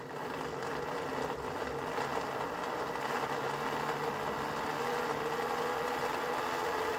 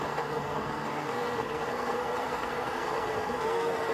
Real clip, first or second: first